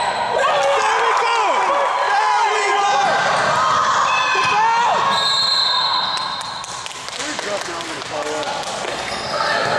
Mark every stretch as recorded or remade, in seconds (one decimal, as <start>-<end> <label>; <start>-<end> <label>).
0.0-8.9 recorded; 8.9-9.8 remade